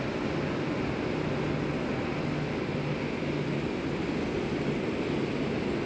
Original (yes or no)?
yes